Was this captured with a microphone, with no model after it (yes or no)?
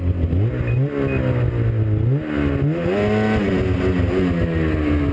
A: yes